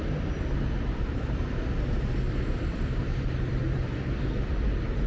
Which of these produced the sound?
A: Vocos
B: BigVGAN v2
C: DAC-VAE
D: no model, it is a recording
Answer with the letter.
B